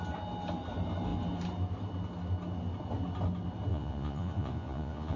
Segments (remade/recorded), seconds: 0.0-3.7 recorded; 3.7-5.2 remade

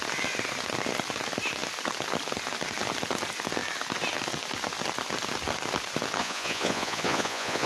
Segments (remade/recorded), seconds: 0.0-6.2 recorded; 6.2-7.7 remade

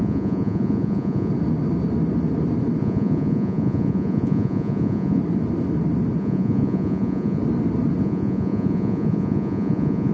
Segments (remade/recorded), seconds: 0.0-1.3 remade; 1.3-2.8 recorded; 2.8-5.2 remade; 5.2-6.2 recorded; 6.2-7.4 remade; 7.4-8.0 recorded; 8.0-10.1 remade

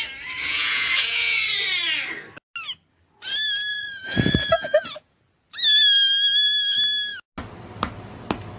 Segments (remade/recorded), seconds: 0.0-0.5 recorded; 0.5-1.6 remade; 1.6-3.7 recorded; 3.7-5.2 remade; 5.2-8.6 recorded

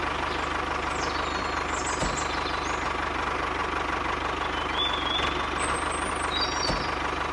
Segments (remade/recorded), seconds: 0.0-7.3 recorded

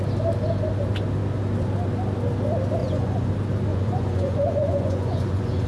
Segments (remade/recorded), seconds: 0.0-2.8 recorded; 2.8-3.3 remade; 3.3-3.7 recorded; 3.7-5.7 remade